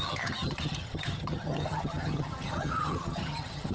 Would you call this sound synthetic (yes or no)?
yes